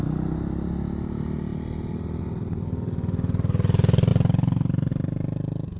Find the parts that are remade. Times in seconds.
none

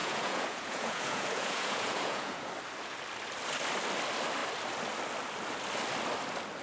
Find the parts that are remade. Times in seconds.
0.0-2.5 (vocoder, Vocos)